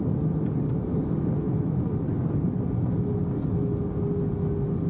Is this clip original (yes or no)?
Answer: yes